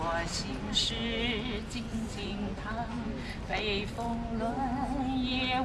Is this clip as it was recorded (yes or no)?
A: yes